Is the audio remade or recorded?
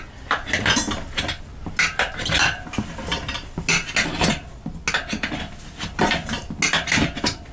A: recorded